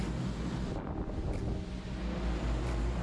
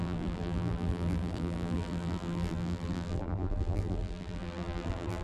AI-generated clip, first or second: second